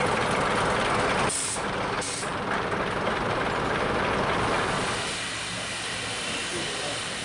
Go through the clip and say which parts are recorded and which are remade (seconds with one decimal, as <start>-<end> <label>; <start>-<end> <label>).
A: 0.0-7.2 recorded